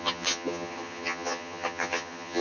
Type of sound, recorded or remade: remade